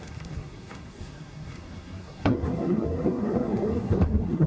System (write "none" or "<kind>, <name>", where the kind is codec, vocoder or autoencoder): codec, SNAC